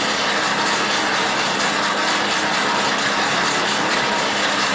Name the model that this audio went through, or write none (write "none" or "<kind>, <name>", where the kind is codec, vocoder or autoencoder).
none